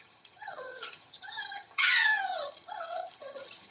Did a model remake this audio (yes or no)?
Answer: yes